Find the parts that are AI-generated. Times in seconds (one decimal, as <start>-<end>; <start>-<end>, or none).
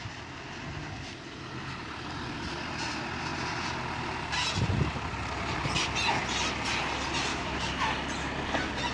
7.3-7.8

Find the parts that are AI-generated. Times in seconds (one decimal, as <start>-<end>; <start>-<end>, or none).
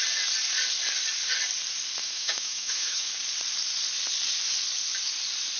2.0-3.1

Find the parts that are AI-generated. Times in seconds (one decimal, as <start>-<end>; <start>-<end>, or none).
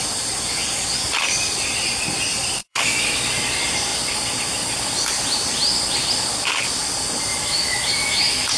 2.6-3.2; 7.3-8.6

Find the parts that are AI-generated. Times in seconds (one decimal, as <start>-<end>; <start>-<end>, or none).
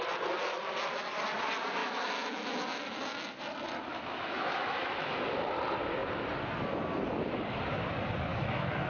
1.8-3.4; 3.9-5.1; 8.3-8.9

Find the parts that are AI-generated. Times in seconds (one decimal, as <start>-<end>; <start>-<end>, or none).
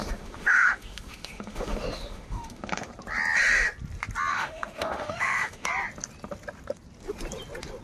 0.0-2.9; 4.3-5.7